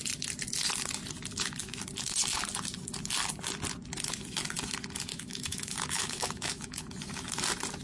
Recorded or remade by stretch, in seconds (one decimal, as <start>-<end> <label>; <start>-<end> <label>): 0.0-5.1 recorded; 5.1-6.8 remade; 6.8-7.8 recorded